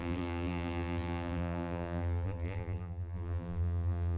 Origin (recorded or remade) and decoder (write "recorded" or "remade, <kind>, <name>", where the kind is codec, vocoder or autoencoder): remade, vocoder, BigVGAN v2